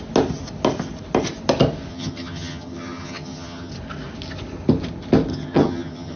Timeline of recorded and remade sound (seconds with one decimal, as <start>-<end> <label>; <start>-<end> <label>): 0.0-1.9 recorded; 1.9-3.7 remade; 3.7-5.3 recorded; 5.3-6.2 remade